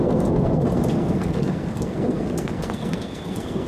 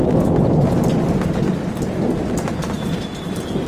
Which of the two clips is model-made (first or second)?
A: first